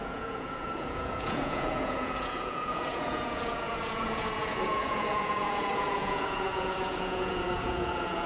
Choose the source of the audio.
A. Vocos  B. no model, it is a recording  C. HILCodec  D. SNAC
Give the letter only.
A